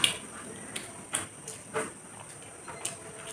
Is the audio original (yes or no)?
yes